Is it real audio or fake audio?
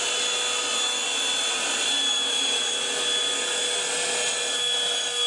real